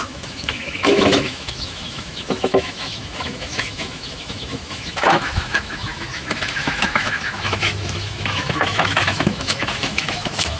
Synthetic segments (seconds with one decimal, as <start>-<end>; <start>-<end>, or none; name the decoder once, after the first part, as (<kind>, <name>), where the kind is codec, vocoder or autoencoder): 0.0-10.6 (autoencoder, DAC-VAE)